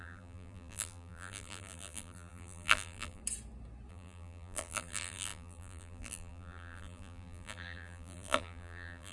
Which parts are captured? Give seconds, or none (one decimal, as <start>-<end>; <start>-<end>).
3.2-3.9